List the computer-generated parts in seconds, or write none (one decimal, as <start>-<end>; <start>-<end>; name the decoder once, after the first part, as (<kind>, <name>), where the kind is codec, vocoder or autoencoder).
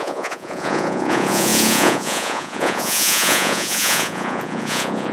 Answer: 0.0-5.1 (vocoder, Vocos)